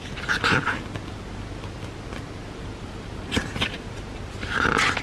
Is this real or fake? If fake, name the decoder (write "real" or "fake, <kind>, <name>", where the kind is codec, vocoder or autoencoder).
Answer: real